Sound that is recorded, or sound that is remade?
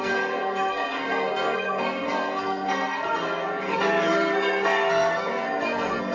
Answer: remade